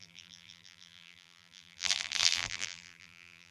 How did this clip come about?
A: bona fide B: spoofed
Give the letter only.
B